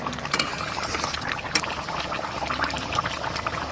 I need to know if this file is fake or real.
fake